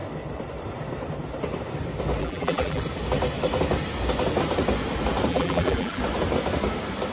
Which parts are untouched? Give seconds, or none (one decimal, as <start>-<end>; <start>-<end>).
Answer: 0.0-2.2; 2.8-5.3; 6.0-7.1